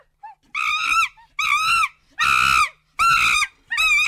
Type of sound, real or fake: real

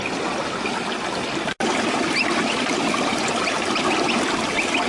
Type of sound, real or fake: real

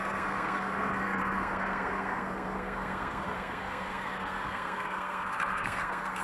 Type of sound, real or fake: fake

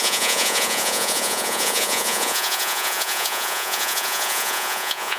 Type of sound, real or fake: fake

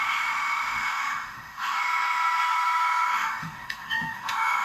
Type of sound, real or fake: fake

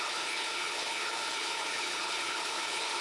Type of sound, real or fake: fake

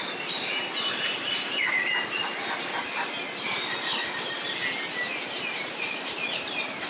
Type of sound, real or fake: real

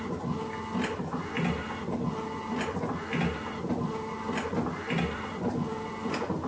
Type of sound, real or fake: real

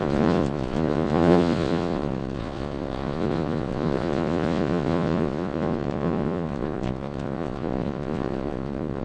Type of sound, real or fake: fake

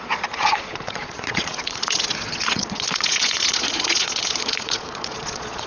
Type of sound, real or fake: fake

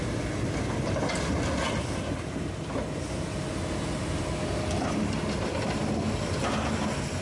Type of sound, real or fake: real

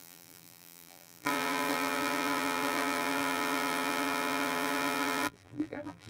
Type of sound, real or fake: fake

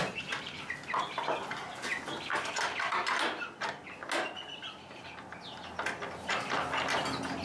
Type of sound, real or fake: real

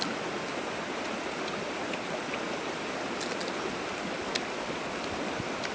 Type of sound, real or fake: real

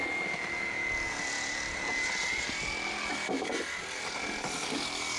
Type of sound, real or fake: real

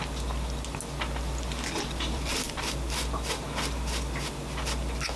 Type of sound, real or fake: real